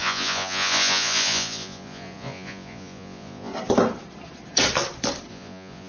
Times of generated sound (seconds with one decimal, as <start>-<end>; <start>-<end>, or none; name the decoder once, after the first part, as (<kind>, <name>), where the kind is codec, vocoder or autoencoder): 0.0-3.5 (vocoder, Vocos); 5.3-5.9